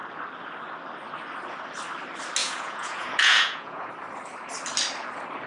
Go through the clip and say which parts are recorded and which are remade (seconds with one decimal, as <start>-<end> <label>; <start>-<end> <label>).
0.0-2.4 recorded; 2.4-3.9 remade; 3.9-5.5 recorded